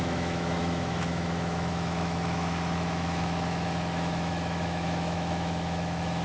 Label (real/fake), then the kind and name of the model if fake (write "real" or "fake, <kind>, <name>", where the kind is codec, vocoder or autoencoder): fake, autoencoder, DAC-VAE